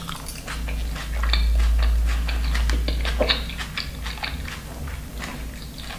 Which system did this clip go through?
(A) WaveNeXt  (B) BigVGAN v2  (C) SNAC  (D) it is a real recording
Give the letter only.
D